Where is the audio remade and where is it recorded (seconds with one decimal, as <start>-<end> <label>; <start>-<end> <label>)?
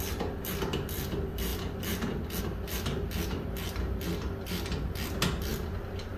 0.0-6.2 recorded